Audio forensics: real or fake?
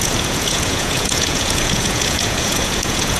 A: fake